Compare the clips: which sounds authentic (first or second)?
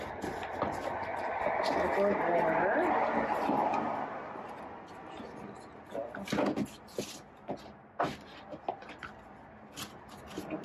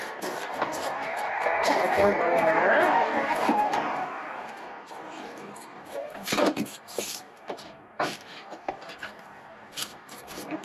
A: first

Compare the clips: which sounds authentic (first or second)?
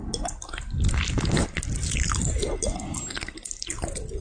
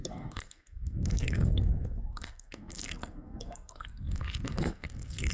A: first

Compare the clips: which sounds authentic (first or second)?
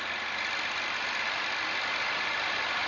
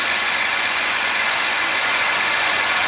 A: first